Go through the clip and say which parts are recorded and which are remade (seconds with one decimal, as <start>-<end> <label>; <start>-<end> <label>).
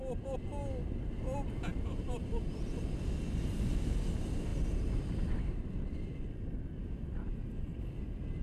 0.0-1.7 recorded; 1.7-2.3 remade; 2.3-8.4 recorded